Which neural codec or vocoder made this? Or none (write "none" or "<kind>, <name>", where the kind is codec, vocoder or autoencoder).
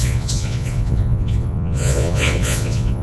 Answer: vocoder, Vocos